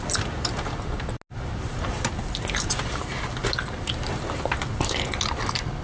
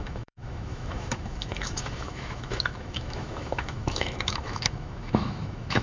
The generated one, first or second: second